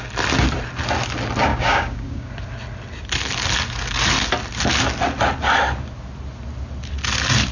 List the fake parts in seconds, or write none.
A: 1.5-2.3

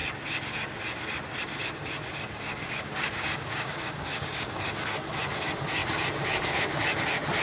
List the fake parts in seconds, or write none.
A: 2.6-4.7

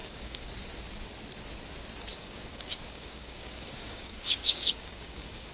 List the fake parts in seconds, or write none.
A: 0.0-0.5; 2.1-5.5